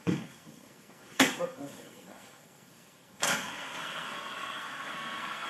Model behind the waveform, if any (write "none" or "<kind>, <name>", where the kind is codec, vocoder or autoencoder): codec, SNAC